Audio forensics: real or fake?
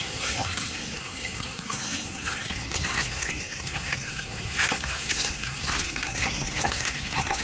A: fake